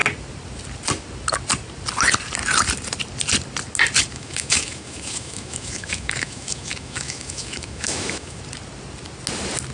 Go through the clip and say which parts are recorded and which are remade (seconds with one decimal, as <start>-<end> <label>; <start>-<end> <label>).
0.0-4.1 recorded; 4.1-8.4 remade; 8.4-9.7 recorded